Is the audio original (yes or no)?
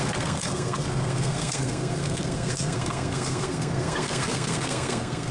no